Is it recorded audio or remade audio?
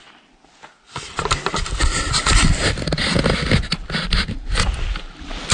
recorded